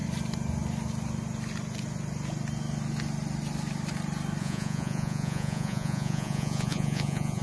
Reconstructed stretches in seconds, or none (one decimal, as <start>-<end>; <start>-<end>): 4.4-7.4